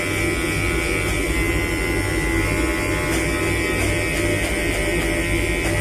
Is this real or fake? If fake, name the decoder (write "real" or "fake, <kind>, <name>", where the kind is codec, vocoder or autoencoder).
real